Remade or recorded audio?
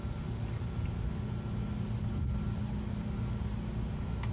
recorded